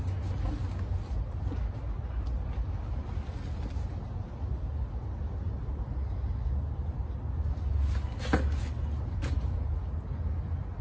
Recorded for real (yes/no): yes